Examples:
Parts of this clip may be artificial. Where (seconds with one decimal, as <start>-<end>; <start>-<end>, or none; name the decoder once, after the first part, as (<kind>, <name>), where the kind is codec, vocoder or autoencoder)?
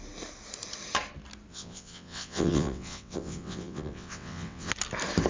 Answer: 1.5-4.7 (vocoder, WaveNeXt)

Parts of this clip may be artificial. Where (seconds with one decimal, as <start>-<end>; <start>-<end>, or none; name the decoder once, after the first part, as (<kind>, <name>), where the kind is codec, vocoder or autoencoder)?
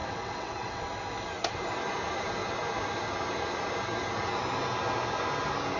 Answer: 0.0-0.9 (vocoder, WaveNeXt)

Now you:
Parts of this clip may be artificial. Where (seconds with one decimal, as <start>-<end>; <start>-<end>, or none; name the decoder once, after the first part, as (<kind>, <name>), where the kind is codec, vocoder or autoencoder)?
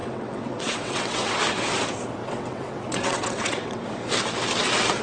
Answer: 0.0-1.4 (vocoder, WaveNeXt); 2.2-3.8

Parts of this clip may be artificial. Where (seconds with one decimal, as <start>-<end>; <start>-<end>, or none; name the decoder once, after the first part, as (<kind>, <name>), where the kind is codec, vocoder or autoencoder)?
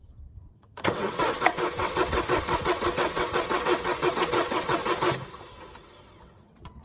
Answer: 0.0-4.8 (vocoder, WaveNeXt); 6.2-6.8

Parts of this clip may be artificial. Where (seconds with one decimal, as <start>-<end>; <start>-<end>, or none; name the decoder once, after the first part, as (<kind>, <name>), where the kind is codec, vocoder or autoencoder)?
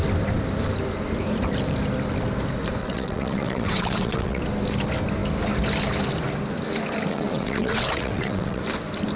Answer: 2.8-4.4 (vocoder, WaveNeXt); 7.1-8.6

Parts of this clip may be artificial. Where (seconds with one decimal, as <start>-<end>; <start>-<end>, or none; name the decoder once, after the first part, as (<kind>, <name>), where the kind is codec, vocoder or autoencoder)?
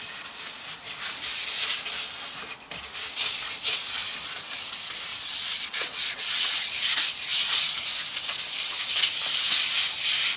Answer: 5.1-6.7 (vocoder, WaveNeXt)